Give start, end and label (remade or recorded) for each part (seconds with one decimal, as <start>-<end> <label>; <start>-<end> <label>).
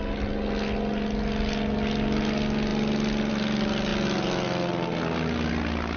0.0-6.0 recorded